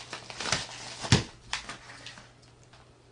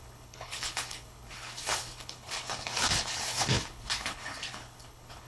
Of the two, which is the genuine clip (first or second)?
first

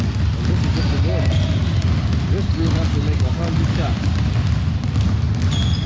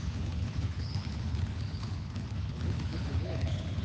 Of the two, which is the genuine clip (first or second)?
first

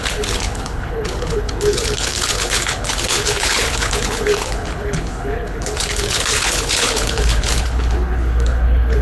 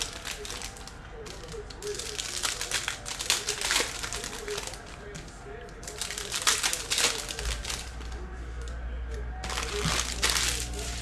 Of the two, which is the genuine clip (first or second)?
second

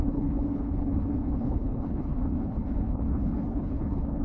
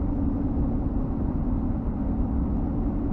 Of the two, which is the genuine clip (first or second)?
second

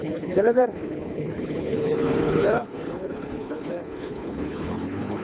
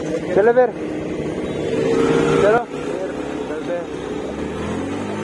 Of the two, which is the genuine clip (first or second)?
second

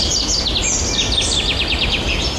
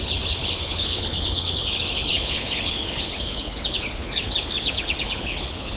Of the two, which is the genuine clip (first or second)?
first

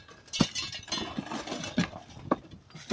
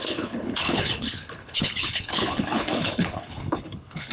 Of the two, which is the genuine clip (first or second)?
first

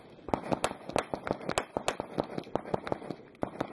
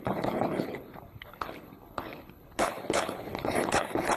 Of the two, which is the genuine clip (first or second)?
first